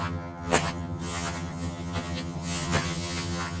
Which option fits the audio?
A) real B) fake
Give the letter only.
B